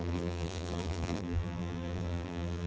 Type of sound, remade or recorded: remade